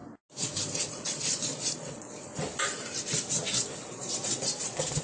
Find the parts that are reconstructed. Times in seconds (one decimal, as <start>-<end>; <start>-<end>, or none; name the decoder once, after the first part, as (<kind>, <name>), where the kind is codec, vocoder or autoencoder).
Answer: 0.9-2.3 (vocoder, Vocos); 3.9-5.0